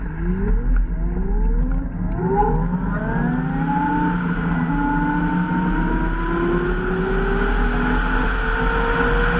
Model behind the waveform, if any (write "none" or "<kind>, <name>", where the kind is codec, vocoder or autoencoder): none